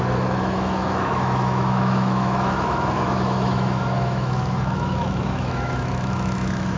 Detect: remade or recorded remade